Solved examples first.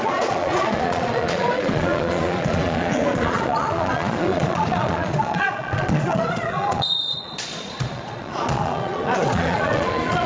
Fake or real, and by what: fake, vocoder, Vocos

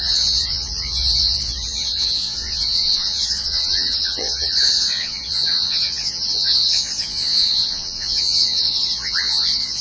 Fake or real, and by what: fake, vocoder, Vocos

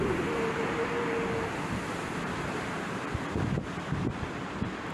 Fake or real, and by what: real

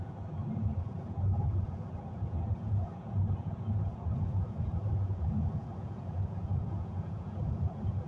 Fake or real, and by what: fake, vocoder, Vocos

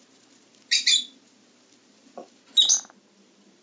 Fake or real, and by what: real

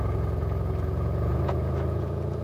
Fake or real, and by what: fake, vocoder, Vocos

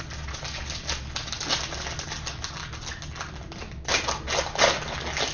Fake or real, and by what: real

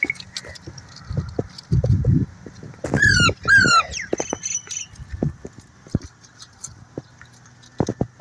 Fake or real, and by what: real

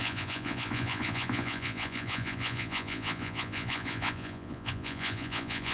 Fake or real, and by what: fake, vocoder, Vocos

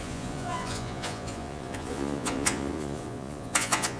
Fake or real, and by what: fake, vocoder, Vocos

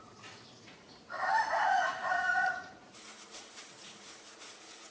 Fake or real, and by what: fake, vocoder, Vocos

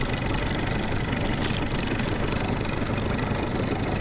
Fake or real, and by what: real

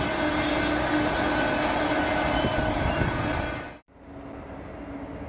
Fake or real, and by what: real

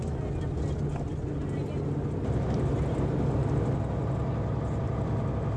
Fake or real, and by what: real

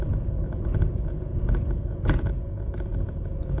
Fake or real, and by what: fake, vocoder, Vocos